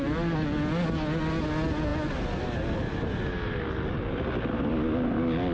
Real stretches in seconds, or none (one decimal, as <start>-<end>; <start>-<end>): 0.0-5.5